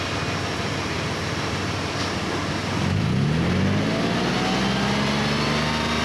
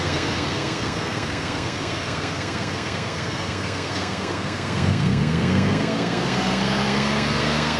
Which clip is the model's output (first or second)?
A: second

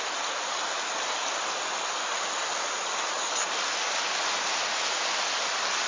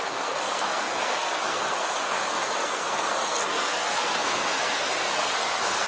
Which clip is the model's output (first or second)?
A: second